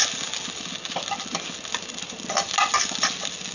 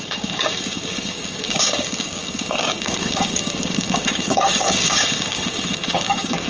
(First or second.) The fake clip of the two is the second